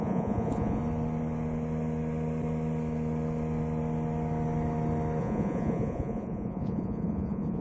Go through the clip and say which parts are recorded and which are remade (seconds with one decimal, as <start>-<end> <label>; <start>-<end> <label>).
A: 0.0-0.8 remade; 0.8-5.2 recorded; 5.2-7.6 remade